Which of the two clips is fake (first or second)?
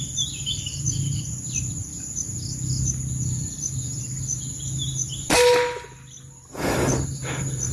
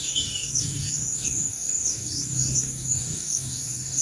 second